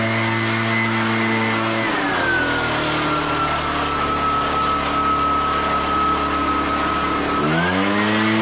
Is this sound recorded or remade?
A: recorded